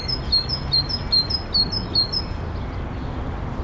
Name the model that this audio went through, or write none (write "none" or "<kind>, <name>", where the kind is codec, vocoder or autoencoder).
none